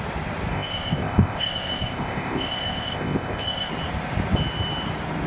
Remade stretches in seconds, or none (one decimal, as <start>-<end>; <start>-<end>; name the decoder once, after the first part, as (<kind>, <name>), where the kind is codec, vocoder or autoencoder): 0.5-3.7 (codec, ZipCodec)